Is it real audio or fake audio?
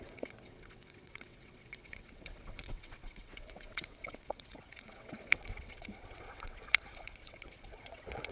fake